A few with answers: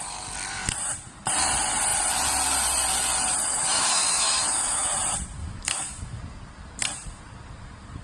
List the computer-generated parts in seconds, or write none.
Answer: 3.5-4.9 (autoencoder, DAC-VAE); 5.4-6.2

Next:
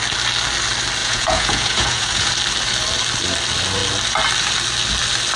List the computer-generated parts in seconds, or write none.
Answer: 1.0-2.3 (vocoder, Vocos)

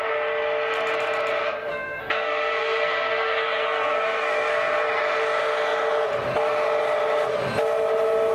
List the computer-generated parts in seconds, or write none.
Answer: 1.4-5.0 (codec, SNAC)

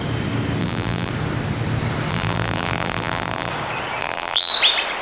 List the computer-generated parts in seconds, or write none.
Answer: 0.6-1.1 (vocoder, BigVGAN v2); 2.1-3.5; 4.0-4.5

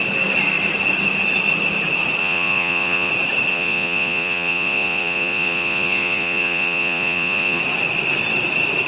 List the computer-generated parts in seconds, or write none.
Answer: 2.2-3.1 (vocoder, Vocos); 3.5-7.6

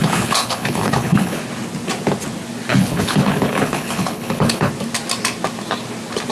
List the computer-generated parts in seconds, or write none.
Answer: 0.0-1.4 (codec, HILCodec); 2.7-4.7